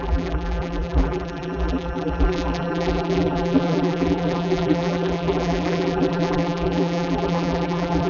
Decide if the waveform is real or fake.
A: fake